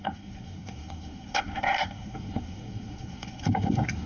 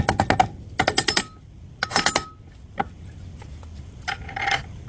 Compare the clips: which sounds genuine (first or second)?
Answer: second